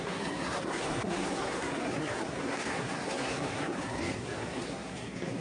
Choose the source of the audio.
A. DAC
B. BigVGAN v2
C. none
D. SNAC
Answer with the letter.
D